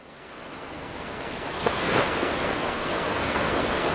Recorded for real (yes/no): no